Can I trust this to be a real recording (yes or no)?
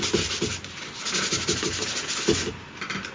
yes